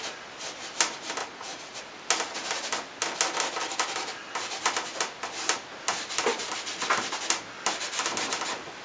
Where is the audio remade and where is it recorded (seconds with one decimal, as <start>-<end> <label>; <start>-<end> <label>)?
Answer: 0.0-1.2 recorded; 1.2-1.8 remade; 1.8-8.8 recorded